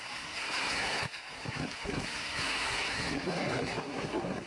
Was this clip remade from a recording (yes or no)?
yes